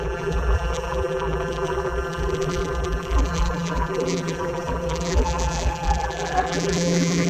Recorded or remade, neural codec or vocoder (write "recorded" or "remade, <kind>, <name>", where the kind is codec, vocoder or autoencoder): remade, vocoder, BigVGAN v2